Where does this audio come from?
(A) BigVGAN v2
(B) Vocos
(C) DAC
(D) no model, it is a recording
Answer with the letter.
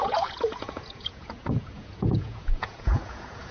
B